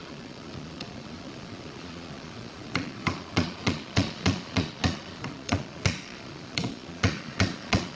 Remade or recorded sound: remade